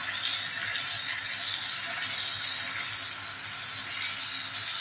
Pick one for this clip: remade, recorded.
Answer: recorded